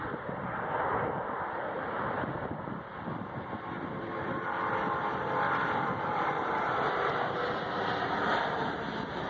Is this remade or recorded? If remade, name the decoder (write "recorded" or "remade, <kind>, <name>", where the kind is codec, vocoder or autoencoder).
remade, vocoder, BigVGAN v2